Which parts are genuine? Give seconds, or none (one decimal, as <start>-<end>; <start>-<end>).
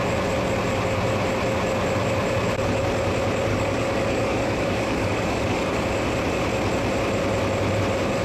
0.0-3.5; 5.9-8.2